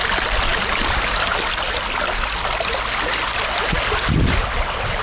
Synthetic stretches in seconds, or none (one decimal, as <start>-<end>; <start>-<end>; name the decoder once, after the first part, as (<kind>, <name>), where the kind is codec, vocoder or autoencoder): none